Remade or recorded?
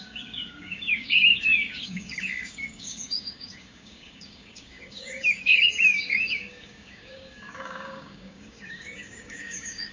remade